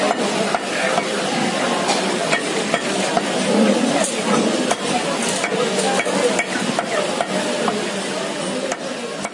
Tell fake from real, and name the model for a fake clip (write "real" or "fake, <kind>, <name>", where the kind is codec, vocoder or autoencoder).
real